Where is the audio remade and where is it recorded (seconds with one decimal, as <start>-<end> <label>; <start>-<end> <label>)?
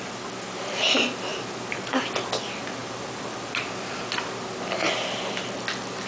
0.0-6.1 recorded